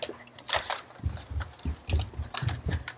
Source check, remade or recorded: recorded